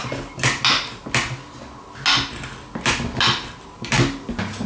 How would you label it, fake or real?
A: real